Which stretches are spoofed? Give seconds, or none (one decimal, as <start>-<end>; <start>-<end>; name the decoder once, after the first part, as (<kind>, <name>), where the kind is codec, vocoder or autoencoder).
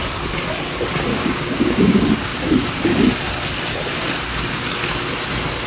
1.1-1.9 (codec, DAC)